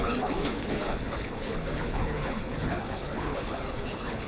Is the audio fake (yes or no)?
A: yes